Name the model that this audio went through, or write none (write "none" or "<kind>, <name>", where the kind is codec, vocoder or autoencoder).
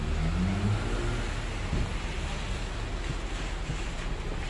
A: none